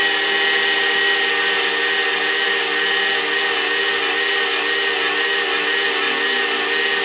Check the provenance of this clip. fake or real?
real